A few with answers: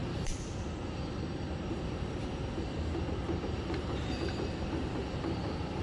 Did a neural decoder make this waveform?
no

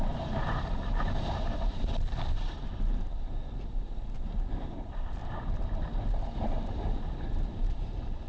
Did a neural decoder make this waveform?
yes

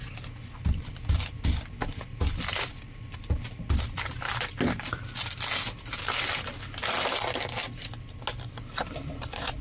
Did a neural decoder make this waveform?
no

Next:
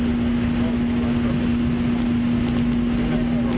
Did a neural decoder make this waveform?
no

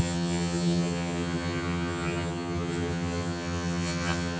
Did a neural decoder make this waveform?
yes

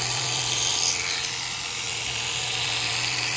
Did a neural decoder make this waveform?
yes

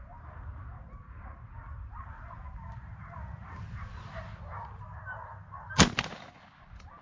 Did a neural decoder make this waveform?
no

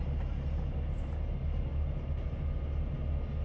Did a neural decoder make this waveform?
no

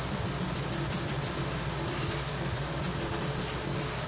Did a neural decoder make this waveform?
no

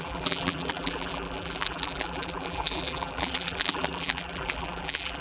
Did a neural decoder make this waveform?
yes